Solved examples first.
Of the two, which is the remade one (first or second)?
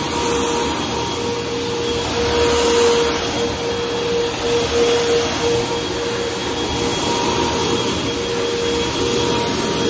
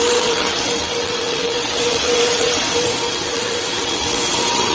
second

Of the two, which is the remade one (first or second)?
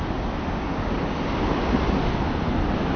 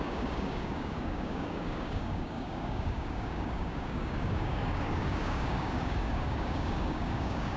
second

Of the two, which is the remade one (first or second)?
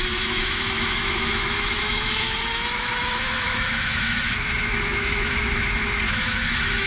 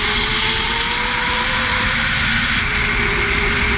first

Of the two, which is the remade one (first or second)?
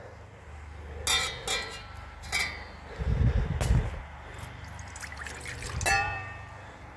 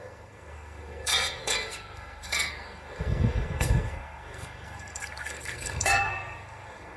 second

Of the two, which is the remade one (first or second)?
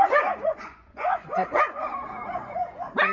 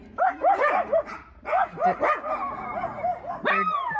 first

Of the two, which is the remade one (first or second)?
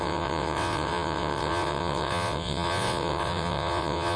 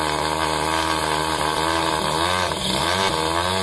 first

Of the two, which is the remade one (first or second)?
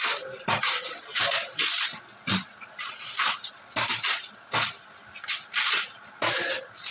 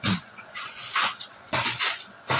second